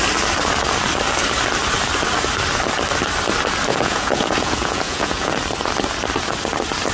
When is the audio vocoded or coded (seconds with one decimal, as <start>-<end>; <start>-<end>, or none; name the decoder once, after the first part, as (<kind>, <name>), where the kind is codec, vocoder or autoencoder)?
3.7-5.3 (vocoder, Vocos)